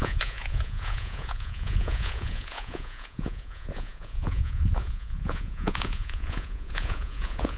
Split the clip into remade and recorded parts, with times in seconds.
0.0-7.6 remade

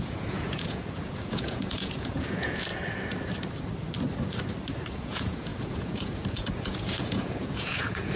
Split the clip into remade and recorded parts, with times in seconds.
0.0-2.7 remade; 2.7-4.9 recorded; 4.9-8.2 remade

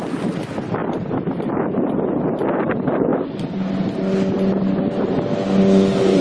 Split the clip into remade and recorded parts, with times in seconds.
0.0-6.2 recorded

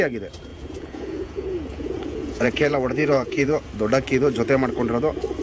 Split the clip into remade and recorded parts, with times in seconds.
0.0-0.5 recorded; 0.5-3.7 remade; 3.7-5.4 recorded

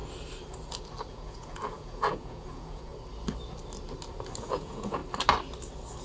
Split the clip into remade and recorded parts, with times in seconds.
0.0-1.1 recorded; 1.1-2.9 remade; 2.9-4.4 recorded; 4.4-5.0 remade; 5.0-6.0 recorded

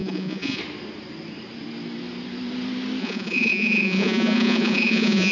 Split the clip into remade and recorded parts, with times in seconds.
0.0-0.6 remade; 0.6-3.0 recorded; 3.0-5.3 remade

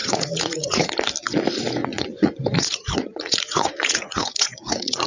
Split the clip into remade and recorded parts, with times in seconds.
0.0-0.9 remade; 0.9-1.8 recorded; 1.8-5.1 remade